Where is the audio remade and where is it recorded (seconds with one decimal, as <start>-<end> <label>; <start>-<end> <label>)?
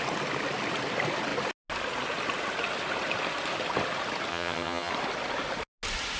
0.0-4.3 recorded; 4.3-4.9 remade; 4.9-6.2 recorded